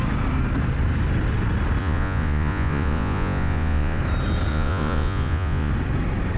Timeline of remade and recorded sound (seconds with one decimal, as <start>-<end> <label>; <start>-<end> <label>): 0.0-1.8 recorded; 1.8-4.0 remade; 4.0-4.5 recorded; 4.5-5.7 remade; 5.7-6.4 recorded

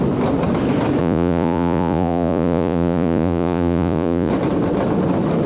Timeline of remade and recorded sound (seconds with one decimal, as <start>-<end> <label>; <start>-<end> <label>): 0.0-1.0 recorded; 1.0-4.3 remade; 4.3-5.5 recorded